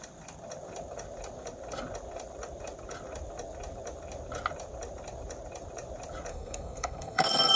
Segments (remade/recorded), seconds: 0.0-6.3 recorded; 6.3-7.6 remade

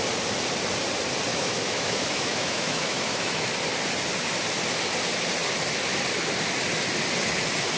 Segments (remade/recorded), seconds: 0.0-1.3 recorded; 1.3-3.5 remade; 3.5-7.8 recorded

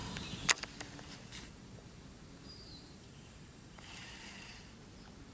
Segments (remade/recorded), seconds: 0.0-0.5 remade; 0.5-1.3 recorded; 1.3-4.5 remade; 4.5-5.3 recorded

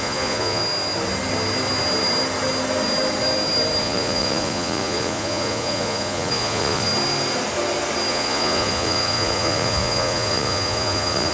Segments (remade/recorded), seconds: 0.0-0.6 remade; 0.6-3.8 recorded; 3.8-6.9 remade; 6.9-8.1 recorded; 8.1-11.3 remade

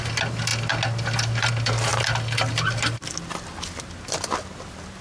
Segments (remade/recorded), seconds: 0.0-5.0 recorded

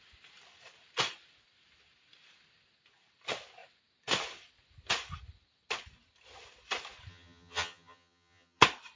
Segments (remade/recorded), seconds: 0.0-7.1 recorded; 7.1-8.6 remade; 8.6-9.0 recorded

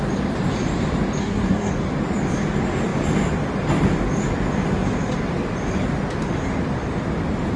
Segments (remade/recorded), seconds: 0.0-1.2 recorded; 1.2-1.7 remade; 1.7-7.6 recorded

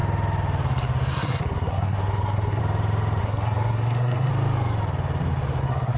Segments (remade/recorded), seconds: 0.0-1.1 recorded; 1.1-2.6 remade; 2.6-3.2 recorded; 3.2-4.3 remade; 4.3-5.6 recorded; 5.6-6.0 remade